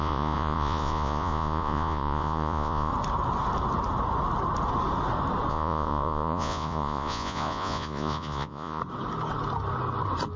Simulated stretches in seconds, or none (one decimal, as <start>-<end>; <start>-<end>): 0.0-2.9; 5.5-8.8